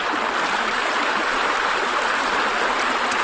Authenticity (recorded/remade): recorded